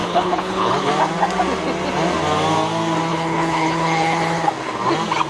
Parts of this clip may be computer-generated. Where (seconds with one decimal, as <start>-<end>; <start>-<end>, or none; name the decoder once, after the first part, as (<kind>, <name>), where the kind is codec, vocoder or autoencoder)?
0.0-0.9 (codec, HILCodec); 3.1-4.5